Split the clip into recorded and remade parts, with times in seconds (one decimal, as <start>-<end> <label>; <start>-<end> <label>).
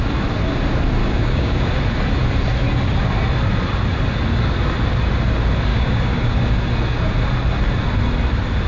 0.0-1.0 recorded; 1.0-1.7 remade; 1.7-5.7 recorded; 5.7-6.5 remade; 6.5-8.7 recorded